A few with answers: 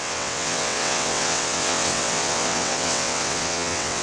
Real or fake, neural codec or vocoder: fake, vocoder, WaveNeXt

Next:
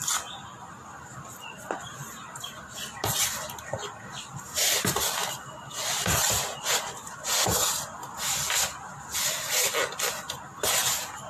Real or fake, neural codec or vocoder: real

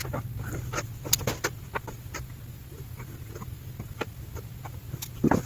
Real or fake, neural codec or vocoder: real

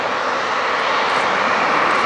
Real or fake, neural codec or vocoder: real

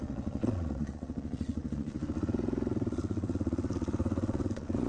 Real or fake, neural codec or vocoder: fake, vocoder, Vocos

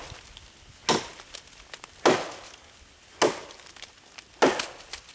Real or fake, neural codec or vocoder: real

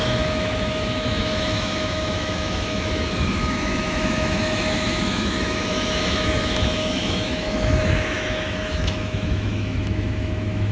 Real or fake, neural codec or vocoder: fake, autoencoder, DAC-VAE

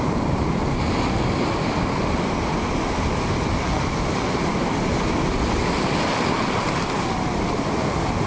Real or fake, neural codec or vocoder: real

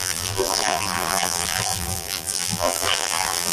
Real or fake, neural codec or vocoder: fake, vocoder, BigVGAN v2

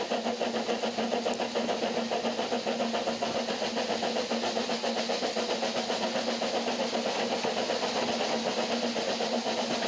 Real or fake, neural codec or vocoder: real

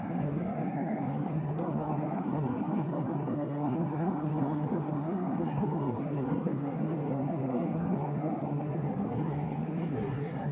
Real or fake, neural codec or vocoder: fake, codec, SNAC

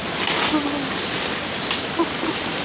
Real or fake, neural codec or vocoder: real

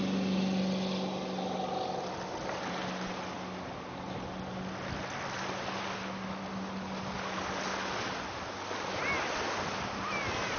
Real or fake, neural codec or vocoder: real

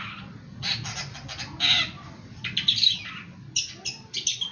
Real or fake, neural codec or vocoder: real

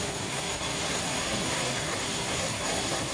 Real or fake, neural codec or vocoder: fake, codec, SNAC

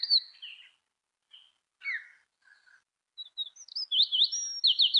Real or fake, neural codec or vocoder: real